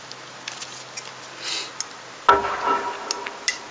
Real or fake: real